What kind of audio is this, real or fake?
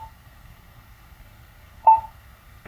fake